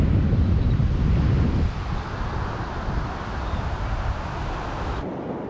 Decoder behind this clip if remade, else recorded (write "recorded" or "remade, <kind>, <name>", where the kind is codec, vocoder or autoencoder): recorded